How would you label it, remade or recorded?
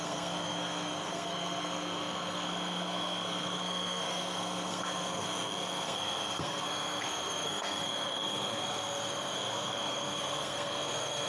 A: remade